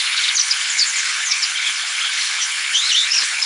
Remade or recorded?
remade